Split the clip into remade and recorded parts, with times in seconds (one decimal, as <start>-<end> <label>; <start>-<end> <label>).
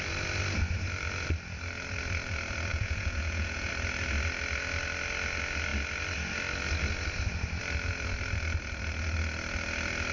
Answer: 0.0-2.7 recorded; 2.7-3.7 remade; 3.7-10.1 recorded